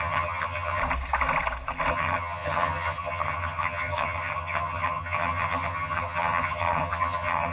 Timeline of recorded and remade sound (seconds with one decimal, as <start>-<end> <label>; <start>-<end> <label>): 0.0-0.8 remade; 0.8-1.9 recorded; 1.9-7.5 remade